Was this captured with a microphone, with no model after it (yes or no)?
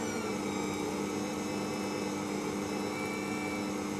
yes